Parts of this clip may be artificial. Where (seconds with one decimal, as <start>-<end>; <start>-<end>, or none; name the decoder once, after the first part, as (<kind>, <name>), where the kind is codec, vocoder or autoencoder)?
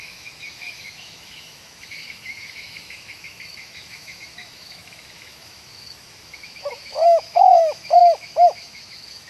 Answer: 0.0-9.3 (autoencoder, DAC-VAE)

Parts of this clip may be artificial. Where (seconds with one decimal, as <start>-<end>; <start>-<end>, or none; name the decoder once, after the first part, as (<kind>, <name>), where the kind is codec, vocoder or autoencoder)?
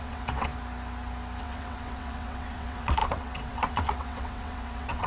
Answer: 0.0-0.5 (vocoder, WaveNeXt); 1.4-5.1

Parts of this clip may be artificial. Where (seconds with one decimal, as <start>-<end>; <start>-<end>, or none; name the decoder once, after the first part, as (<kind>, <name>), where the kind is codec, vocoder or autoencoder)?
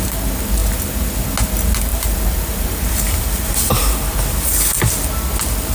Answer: 1.9-4.5 (vocoder, BigVGAN v2)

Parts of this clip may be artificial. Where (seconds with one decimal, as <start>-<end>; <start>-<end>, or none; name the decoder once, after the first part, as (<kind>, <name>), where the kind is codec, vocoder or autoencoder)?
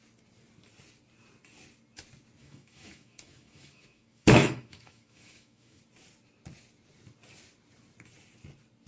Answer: 2.4-5.8 (autoencoder, DAC-VAE)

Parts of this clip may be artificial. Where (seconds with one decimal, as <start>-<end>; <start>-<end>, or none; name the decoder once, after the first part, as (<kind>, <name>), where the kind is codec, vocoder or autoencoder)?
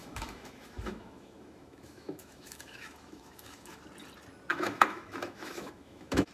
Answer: 0.0-3.8 (autoencoder, DAC-VAE); 4.5-6.3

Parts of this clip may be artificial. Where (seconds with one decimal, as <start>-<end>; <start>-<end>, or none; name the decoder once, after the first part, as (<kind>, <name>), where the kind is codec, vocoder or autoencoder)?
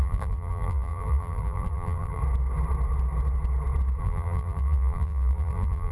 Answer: 0.0-2.2 (vocoder, BigVGAN v2); 4.0-5.9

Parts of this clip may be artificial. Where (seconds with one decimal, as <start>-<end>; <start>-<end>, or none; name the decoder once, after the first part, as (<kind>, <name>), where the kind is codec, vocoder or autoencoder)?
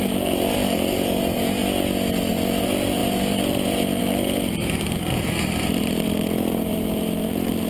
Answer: 0.0-1.6 (vocoder, BigVGAN v2); 2.3-7.7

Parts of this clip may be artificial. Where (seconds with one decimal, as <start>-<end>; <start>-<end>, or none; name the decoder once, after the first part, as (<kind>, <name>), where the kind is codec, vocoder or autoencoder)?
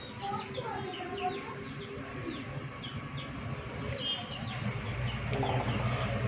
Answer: none